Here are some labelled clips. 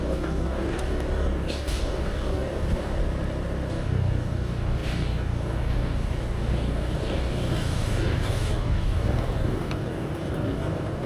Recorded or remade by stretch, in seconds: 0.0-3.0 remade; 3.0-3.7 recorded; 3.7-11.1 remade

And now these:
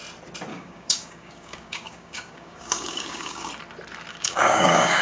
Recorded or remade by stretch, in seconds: 0.0-0.5 recorded; 0.5-3.5 remade; 3.5-4.1 recorded; 4.1-5.0 remade

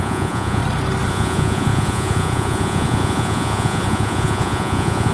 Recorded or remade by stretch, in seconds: 0.0-0.6 remade; 0.6-1.1 recorded; 1.1-5.1 remade

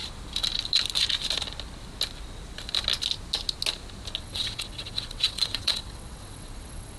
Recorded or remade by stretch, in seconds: 0.0-4.2 recorded; 4.2-7.0 remade

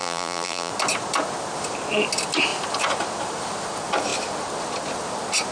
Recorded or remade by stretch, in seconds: 0.0-0.7 remade; 0.7-5.5 recorded

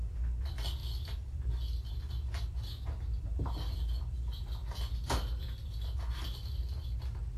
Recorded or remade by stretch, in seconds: 0.0-7.4 recorded